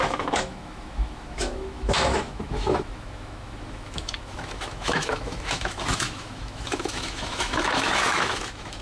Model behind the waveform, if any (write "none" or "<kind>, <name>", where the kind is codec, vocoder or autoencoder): autoencoder, DAC-VAE